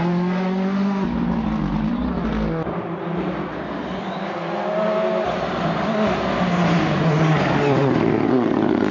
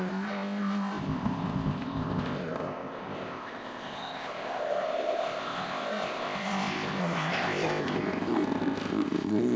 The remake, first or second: second